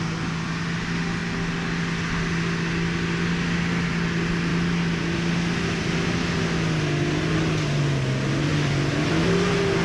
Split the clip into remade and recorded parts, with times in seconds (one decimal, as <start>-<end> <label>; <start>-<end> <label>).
0.0-8.5 recorded; 8.5-9.1 remade; 9.1-9.8 recorded